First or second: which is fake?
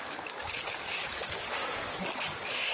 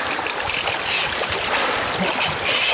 first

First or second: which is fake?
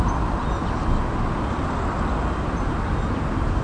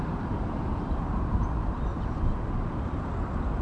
second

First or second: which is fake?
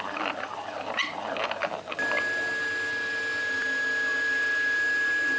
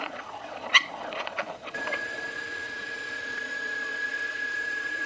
second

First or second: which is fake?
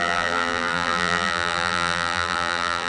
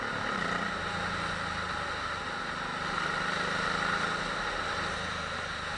first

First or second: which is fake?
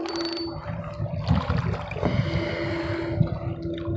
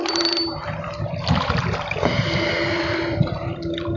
second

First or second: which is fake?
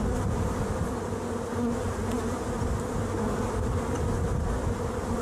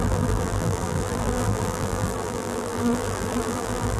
second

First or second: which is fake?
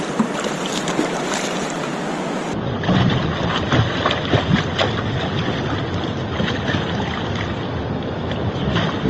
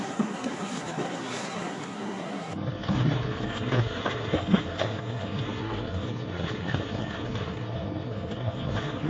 second